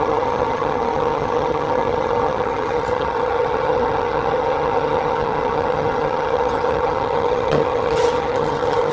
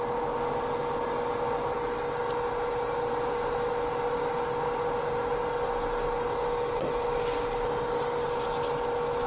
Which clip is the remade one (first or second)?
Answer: first